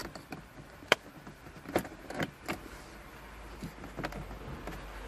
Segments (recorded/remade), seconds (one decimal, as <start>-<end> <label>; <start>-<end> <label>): 0.0-5.1 recorded